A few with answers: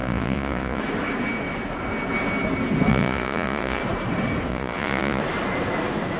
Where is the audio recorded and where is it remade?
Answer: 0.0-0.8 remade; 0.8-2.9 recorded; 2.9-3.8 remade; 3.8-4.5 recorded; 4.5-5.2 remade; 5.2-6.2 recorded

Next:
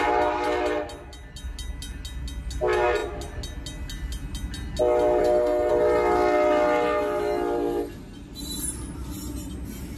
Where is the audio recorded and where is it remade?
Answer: 0.0-5.2 recorded; 5.2-5.7 remade; 5.7-10.0 recorded